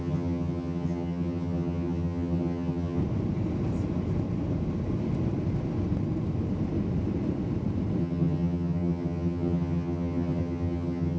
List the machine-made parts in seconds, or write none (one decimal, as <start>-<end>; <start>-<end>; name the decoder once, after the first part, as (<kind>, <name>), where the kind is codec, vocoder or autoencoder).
0.0-3.0 (vocoder, HiFi-GAN); 8.0-11.2